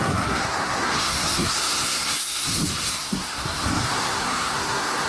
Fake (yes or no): yes